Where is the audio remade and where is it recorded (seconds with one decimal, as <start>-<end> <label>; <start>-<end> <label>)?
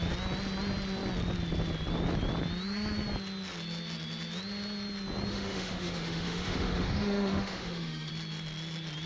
0.0-5.3 recorded; 5.3-8.1 remade; 8.1-9.1 recorded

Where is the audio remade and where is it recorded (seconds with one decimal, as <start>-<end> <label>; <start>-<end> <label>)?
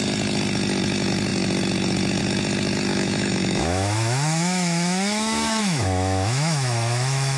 0.0-2.9 recorded; 2.9-7.4 remade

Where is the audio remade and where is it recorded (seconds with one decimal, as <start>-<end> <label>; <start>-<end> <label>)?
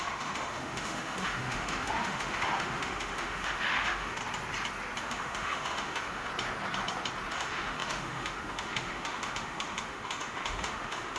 0.0-4.2 remade; 4.2-5.0 recorded; 5.0-6.3 remade; 6.3-7.3 recorded; 7.3-11.2 remade